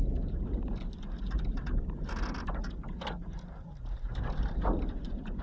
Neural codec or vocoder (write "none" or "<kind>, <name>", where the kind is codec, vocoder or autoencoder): none